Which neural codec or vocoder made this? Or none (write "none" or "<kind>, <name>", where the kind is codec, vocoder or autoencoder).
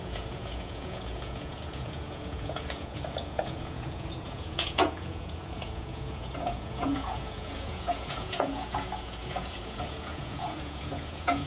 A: vocoder, Vocos